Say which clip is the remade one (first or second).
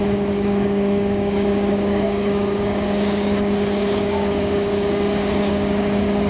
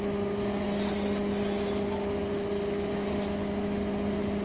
first